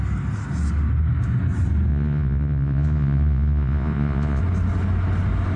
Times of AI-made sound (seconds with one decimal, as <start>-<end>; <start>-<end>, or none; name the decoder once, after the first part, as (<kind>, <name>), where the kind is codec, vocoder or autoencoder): 1.9-4.4 (vocoder, Vocos)